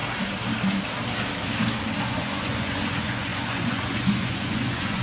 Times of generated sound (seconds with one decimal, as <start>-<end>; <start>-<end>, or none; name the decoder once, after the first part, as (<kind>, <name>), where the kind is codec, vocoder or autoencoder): 2.0-5.0 (vocoder, Vocos)